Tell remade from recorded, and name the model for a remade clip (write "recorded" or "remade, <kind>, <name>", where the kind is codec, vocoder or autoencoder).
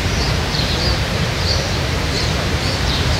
remade, vocoder, BigVGAN v2